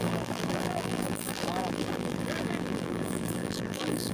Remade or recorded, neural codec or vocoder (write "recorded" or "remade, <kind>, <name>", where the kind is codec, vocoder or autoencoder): remade, vocoder, BigVGAN v2